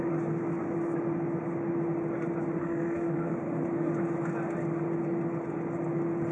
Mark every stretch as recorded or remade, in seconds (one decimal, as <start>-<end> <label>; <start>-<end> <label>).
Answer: 0.0-2.6 recorded; 2.6-3.3 remade; 3.3-6.3 recorded